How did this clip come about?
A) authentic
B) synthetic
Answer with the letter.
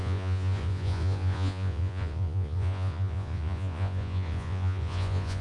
B